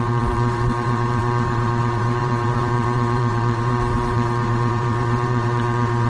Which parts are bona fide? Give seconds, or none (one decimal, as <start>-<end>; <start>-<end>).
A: none